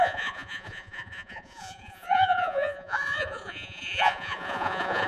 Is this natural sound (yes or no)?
no